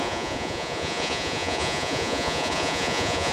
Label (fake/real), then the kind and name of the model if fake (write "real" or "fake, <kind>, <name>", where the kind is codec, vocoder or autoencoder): fake, vocoder, Vocos